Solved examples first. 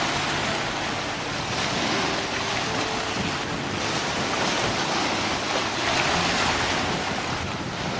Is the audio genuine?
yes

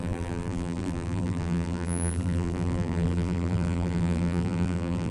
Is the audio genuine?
no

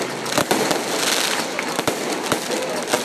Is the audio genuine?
yes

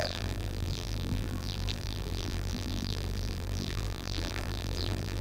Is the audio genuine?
no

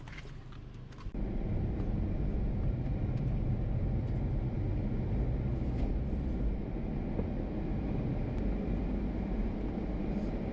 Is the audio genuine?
yes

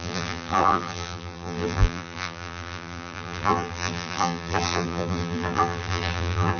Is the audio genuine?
no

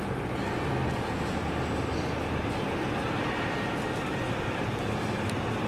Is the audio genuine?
yes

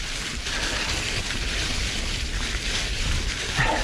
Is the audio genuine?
yes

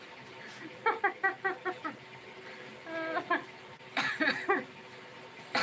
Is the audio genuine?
yes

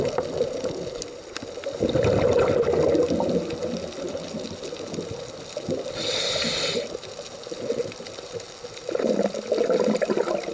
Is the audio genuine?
yes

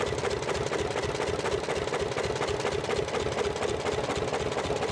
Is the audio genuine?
yes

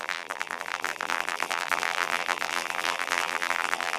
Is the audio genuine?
no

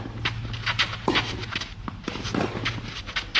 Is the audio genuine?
yes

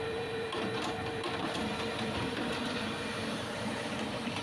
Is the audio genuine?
no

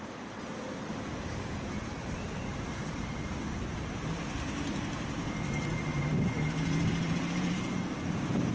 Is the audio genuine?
no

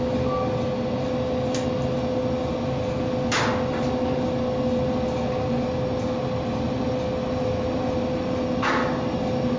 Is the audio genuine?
yes